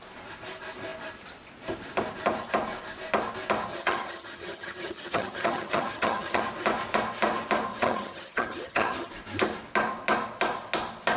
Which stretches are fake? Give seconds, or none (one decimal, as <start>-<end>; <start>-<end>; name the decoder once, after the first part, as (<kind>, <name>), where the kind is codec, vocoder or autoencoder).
3.7-6.4 (vocoder, HiFi-GAN); 7.7-9.1